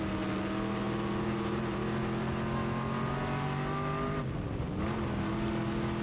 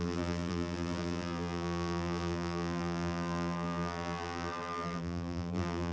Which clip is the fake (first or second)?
second